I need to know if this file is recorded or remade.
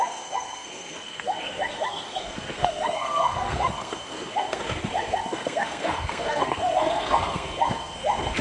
remade